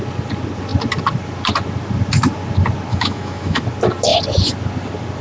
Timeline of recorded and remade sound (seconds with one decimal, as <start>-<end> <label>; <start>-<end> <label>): 0.0-2.9 recorded; 2.9-3.6 remade; 3.6-5.2 recorded